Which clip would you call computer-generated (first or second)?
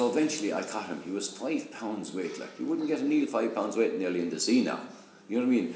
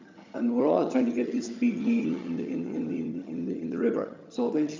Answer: second